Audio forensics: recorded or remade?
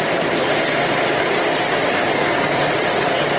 remade